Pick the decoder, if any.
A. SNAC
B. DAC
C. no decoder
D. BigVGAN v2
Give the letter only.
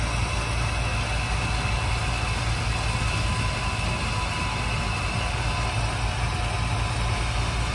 C